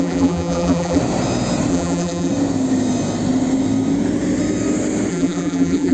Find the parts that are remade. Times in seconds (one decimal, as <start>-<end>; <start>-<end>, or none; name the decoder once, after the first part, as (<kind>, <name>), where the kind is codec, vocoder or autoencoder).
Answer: 0.0-1.0 (vocoder, BigVGAN v2); 1.7-2.3; 5.1-5.9